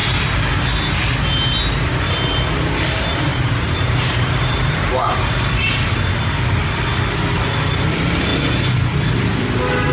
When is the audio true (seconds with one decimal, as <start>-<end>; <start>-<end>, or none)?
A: 0.0-3.3; 6.3-9.9